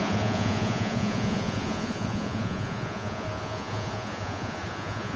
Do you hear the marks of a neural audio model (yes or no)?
yes